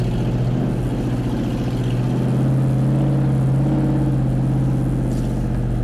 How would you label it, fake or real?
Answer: real